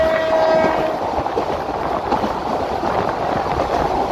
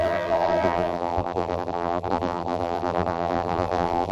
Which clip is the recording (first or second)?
first